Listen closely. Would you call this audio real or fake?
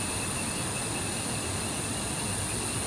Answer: real